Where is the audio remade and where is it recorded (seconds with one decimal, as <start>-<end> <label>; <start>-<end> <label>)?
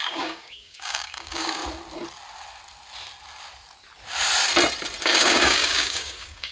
0.0-1.6 remade; 1.6-5.0 recorded; 5.0-6.5 remade